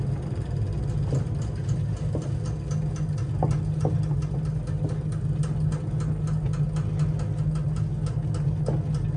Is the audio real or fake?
real